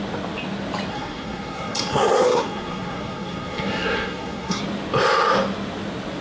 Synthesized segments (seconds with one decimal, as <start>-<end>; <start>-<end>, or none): 0.9-4.6